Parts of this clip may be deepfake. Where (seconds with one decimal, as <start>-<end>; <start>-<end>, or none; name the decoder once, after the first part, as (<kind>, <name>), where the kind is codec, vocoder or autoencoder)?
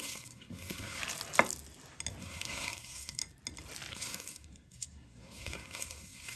0.0-1.0 (codec, SNAC); 2.2-3.2; 3.9-6.4